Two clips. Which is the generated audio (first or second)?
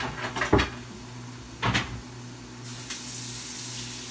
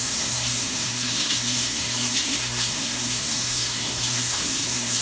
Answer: second